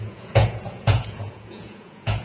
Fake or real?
fake